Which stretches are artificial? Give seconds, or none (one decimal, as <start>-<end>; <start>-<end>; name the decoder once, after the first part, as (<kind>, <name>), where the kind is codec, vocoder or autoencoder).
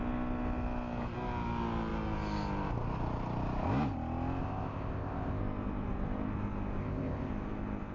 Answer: 4.4-5.4 (codec, ZipCodec); 6.8-7.3